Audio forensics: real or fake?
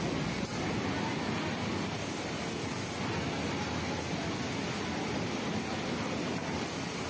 real